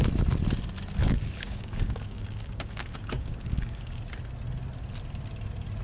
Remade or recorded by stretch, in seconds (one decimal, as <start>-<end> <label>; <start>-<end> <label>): 0.0-1.0 recorded; 1.0-4.0 remade; 4.0-5.8 recorded